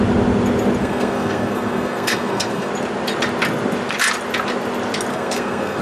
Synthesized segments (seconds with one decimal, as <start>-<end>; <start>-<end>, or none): 0.8-2.7; 5.1-5.8